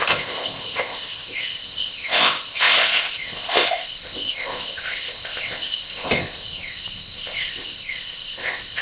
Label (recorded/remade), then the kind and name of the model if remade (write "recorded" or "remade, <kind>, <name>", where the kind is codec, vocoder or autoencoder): remade, codec, ZipCodec